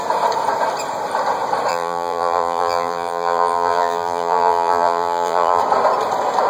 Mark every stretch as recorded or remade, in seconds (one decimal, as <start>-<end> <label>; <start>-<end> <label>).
0.0-1.7 recorded; 1.7-5.6 remade; 5.6-6.5 recorded

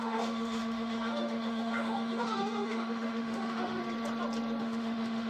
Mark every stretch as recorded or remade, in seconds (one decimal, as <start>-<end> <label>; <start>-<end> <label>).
0.0-3.8 remade; 3.8-4.6 recorded; 4.6-5.3 remade

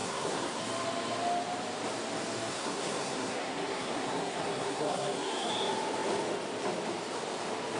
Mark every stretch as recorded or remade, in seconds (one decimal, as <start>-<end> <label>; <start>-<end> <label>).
0.0-0.6 remade; 0.6-2.5 recorded; 2.5-5.5 remade; 5.5-7.8 recorded

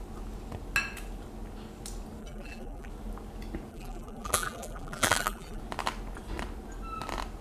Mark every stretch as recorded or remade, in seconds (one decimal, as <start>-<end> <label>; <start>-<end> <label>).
0.0-2.2 recorded; 2.2-2.9 remade; 2.9-3.7 recorded; 3.7-5.6 remade; 5.6-7.4 recorded

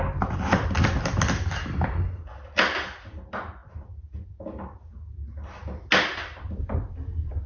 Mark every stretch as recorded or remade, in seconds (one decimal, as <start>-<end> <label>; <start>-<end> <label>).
0.0-7.5 recorded

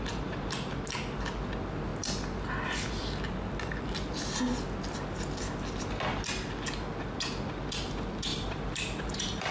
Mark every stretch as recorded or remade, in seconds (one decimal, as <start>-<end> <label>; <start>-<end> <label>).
0.0-8.3 recorded; 8.3-9.5 remade